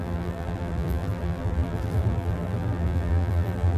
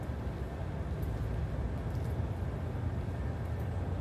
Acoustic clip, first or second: second